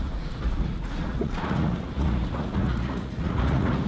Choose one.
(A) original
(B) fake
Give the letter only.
B